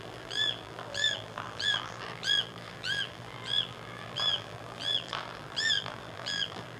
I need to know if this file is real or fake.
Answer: fake